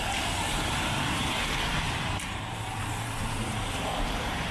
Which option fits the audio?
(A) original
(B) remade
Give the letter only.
B